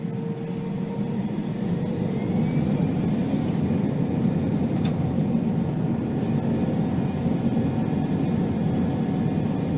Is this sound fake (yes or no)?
no